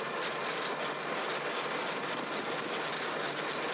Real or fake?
real